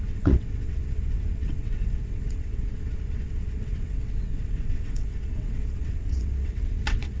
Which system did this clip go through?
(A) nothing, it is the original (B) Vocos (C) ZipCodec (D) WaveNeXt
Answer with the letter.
D